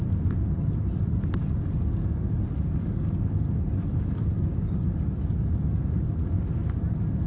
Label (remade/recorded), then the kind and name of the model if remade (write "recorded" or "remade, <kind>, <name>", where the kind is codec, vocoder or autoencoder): recorded